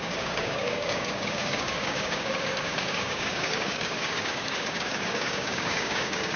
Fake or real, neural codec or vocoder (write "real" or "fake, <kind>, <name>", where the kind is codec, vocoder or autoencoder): fake, codec, DAC